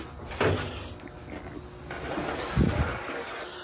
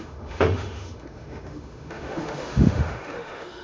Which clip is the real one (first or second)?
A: first